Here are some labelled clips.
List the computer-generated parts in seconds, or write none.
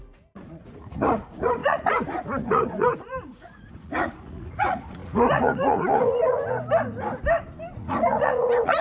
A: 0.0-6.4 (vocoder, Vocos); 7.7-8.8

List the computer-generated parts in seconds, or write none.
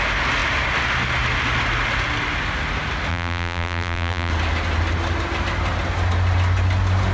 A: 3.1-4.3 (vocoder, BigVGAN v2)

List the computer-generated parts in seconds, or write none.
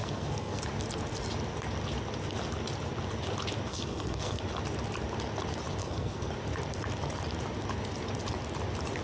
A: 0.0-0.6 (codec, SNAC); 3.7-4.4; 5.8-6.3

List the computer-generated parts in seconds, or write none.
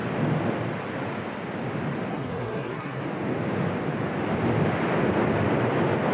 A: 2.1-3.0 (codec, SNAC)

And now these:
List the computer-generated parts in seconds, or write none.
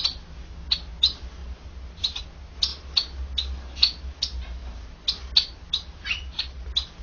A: none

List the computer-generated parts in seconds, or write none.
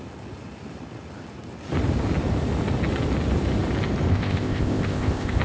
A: 4.1-5.4 (codec, ZipCodec)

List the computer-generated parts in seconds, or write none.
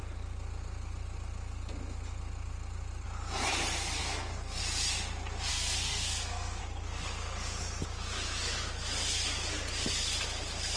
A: 4.0-4.6 (codec, SNAC); 5.5-6.6